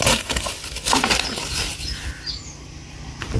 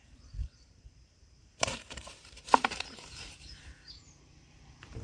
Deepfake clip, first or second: second